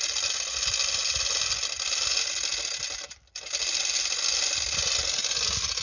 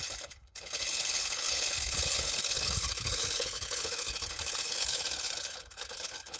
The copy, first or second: second